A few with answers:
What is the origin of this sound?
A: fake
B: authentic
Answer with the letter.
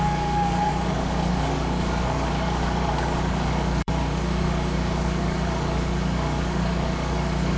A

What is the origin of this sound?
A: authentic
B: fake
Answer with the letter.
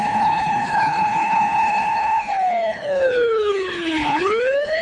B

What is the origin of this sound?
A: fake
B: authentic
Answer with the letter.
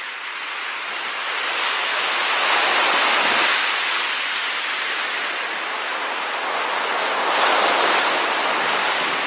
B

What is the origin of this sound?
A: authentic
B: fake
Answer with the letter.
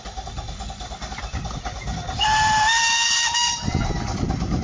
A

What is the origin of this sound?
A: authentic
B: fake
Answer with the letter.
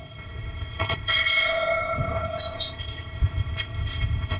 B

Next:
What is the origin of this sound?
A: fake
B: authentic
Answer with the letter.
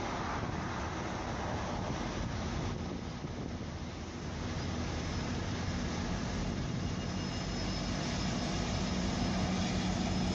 B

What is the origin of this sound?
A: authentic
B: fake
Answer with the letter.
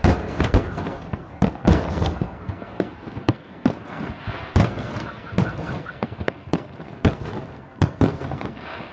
B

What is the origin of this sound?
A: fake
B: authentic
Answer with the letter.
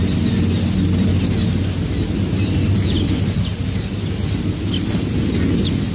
B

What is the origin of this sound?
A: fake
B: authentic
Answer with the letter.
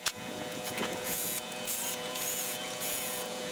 A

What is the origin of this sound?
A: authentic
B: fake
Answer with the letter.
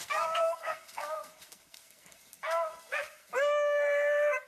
B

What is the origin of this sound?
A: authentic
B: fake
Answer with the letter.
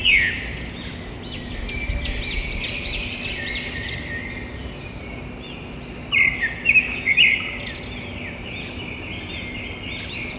A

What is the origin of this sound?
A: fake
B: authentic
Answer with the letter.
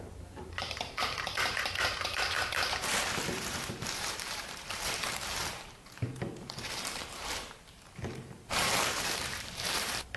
A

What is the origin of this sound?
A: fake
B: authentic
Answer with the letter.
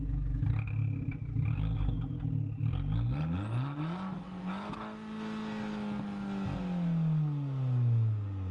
B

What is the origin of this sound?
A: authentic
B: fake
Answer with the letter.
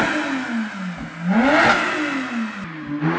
A